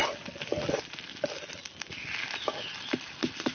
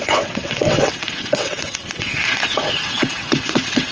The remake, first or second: second